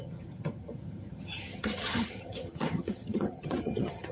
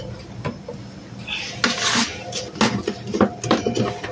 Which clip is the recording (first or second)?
second